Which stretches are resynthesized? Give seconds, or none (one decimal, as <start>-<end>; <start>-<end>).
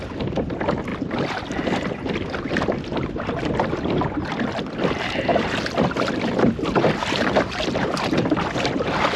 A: none